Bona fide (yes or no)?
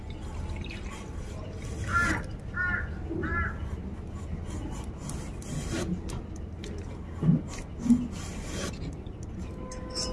yes